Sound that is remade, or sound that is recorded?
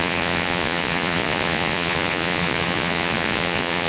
remade